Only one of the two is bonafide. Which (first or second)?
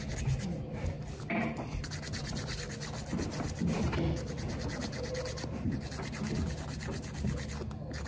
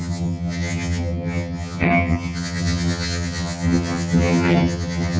first